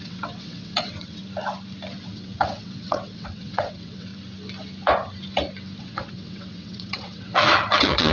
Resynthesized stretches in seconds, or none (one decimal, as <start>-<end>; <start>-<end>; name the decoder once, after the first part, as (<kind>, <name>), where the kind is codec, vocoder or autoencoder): 0.0-1.2 (vocoder, WaveNeXt); 2.0-4.1; 5.8-8.1

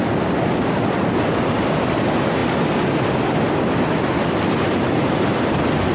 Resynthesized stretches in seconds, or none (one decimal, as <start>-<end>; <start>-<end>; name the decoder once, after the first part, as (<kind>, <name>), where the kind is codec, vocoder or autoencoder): none

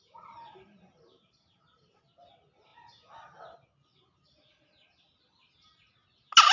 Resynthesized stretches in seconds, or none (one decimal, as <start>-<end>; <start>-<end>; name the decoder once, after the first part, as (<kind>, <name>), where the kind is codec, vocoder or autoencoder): none

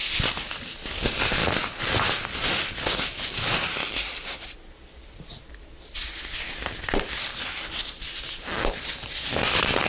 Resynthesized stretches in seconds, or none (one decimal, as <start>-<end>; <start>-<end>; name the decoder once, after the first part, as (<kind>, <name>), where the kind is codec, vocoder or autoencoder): none

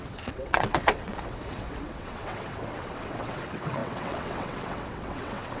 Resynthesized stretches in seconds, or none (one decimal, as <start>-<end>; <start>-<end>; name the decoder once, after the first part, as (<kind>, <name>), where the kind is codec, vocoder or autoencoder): 0.0-5.6 (vocoder, WaveNeXt)

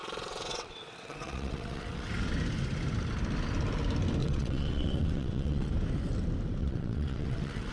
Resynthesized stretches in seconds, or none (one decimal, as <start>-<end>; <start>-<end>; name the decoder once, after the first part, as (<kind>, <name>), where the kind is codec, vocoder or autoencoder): 0.0-2.1 (vocoder, WaveNeXt); 4.2-5.7; 6.6-7.7

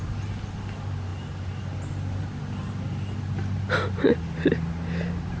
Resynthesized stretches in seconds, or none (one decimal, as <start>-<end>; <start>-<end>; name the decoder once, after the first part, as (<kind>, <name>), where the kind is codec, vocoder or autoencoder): none

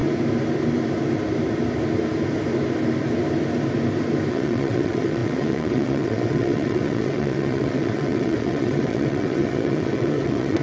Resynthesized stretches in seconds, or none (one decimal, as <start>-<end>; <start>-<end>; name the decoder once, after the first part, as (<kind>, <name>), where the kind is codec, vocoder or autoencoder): 4.3-10.6 (vocoder, WaveNeXt)